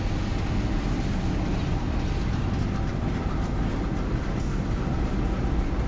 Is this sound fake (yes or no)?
no